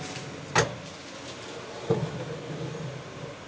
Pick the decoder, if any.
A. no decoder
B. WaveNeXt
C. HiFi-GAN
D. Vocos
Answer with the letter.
A